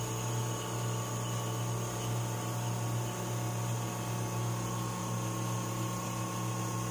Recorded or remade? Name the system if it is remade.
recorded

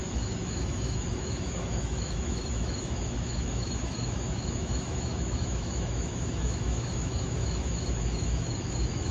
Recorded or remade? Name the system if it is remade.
remade, autoencoder, DAC-VAE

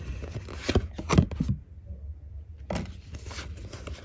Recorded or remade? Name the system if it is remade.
recorded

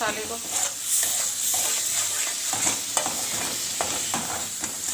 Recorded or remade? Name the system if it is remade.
recorded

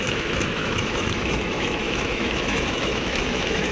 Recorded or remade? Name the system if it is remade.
remade, autoencoder, DAC-VAE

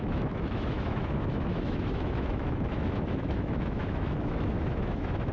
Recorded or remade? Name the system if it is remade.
remade, autoencoder, DAC-VAE